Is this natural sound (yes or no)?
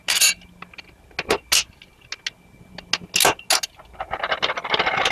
yes